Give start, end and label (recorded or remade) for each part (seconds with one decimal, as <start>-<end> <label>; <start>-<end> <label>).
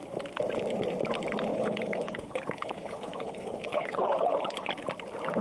0.0-1.5 recorded; 1.5-4.7 remade; 4.7-5.4 recorded